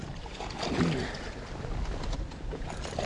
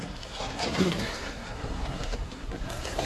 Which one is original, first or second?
first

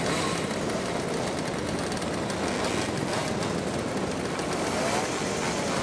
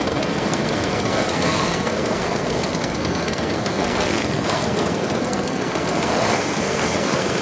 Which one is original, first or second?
first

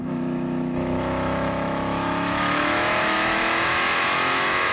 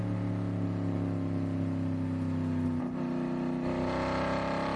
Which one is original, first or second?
second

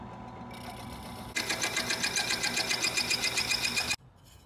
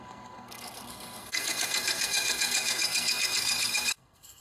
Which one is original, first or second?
first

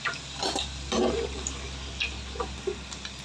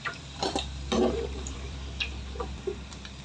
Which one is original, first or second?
first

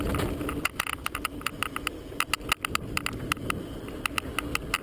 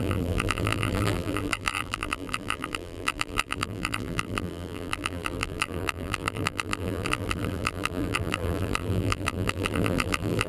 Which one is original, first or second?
first